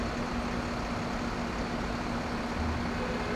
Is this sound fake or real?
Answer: real